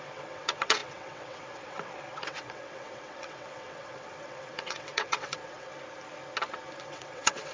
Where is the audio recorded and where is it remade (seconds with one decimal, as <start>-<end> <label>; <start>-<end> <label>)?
0.0-5.7 remade; 5.7-6.8 recorded; 6.8-7.5 remade